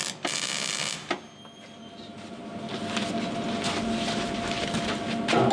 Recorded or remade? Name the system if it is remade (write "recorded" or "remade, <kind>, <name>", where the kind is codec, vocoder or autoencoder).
recorded